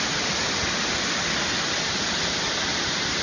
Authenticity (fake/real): real